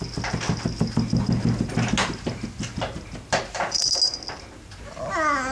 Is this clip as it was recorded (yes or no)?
yes